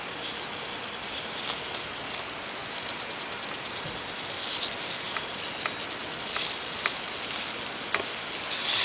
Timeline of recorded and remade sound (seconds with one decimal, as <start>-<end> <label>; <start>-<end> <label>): 0.0-8.8 recorded